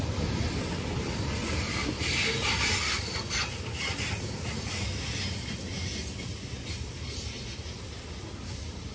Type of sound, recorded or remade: recorded